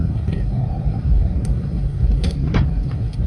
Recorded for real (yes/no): no